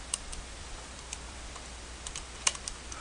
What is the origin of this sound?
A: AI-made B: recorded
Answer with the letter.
A